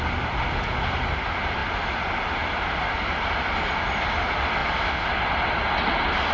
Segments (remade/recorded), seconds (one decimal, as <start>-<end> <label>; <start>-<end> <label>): 0.0-6.3 recorded